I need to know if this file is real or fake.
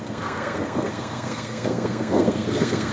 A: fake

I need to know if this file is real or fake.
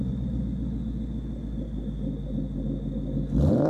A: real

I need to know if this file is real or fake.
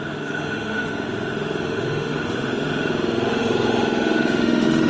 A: fake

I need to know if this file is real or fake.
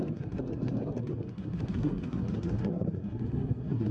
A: fake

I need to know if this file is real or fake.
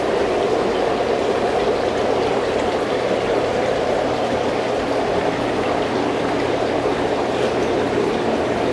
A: real